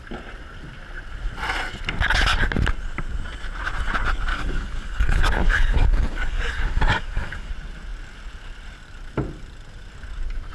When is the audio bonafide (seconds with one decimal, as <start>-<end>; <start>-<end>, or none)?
0.0-4.3; 7.5-10.5